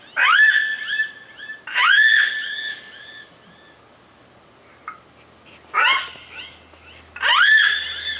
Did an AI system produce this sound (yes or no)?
no